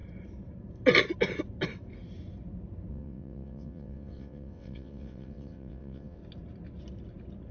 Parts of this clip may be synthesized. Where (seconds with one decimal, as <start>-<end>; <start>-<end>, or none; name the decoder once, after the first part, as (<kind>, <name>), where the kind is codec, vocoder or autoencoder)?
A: 2.9-6.2 (vocoder, WaveNeXt)